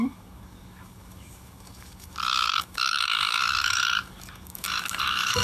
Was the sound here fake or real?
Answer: fake